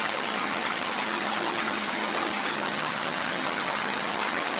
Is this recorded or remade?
remade